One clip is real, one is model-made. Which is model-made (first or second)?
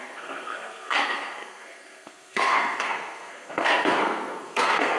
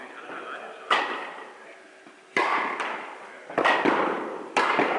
first